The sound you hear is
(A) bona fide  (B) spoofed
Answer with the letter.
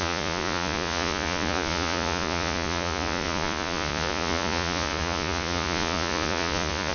B